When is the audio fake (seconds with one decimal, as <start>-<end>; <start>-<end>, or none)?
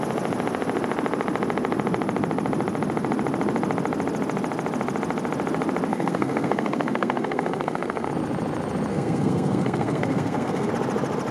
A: 5.9-8.1; 8.9-10.7